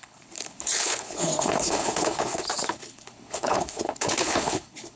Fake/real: fake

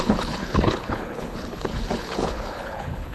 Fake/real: fake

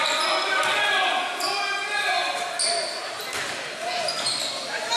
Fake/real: real